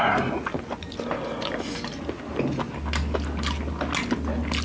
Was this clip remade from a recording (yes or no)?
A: no